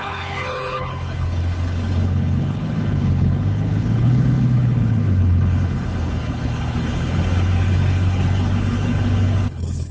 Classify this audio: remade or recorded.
remade